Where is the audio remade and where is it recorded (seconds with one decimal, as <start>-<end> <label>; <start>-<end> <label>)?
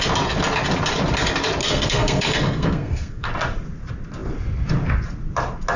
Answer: 0.0-1.6 recorded; 1.6-3.3 remade; 3.3-5.8 recorded